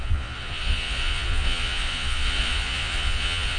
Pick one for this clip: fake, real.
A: fake